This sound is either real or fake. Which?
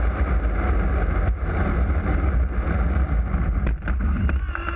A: real